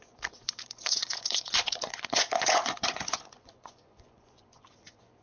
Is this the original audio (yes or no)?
no